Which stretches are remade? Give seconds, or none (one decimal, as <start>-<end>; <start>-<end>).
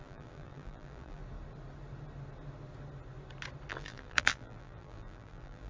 0.0-1.2; 3.7-5.7